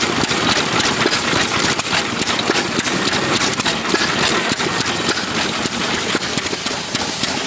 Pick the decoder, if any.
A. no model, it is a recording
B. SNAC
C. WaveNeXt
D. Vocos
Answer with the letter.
A